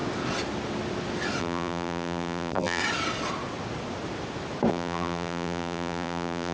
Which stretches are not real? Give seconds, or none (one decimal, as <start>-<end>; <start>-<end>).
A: 1.4-2.8; 4.7-6.5